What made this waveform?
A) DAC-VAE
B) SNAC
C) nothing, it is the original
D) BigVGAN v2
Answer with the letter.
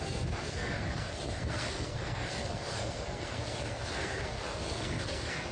B